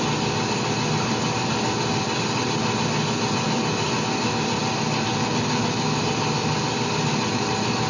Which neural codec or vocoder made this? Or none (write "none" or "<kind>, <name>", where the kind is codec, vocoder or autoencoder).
none